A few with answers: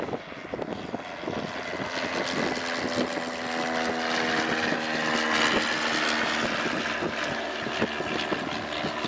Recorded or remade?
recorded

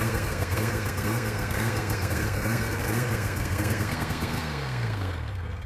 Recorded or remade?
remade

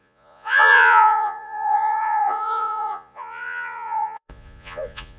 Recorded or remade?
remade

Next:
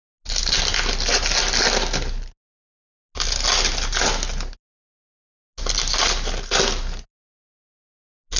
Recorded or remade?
recorded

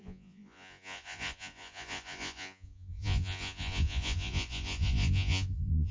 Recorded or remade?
remade